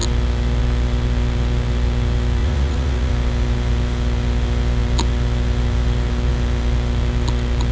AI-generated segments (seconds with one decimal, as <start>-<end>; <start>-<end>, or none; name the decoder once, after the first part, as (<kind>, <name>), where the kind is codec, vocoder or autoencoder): 2.4-3.1 (vocoder, Vocos)